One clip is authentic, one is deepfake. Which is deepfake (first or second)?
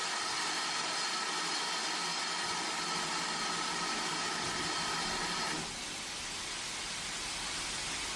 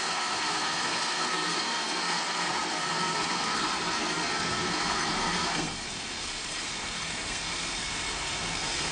second